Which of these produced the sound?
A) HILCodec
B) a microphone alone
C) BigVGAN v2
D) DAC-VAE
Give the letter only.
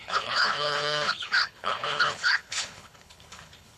A